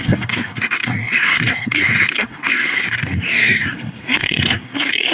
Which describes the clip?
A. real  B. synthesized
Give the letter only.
B